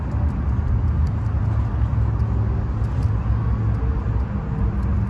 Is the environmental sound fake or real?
real